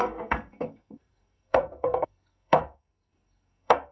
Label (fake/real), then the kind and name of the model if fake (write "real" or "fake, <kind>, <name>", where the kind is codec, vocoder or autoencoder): fake, codec, SNAC